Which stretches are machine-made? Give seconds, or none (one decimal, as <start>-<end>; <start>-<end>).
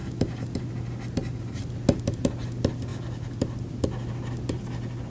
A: 0.0-0.6; 1.2-1.8